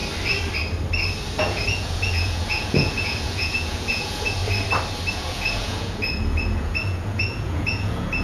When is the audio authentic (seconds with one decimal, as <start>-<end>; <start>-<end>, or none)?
0.0-1.4; 4.4-5.1